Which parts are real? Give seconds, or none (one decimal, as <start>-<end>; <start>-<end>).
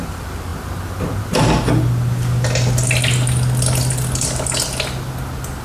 0.0-5.6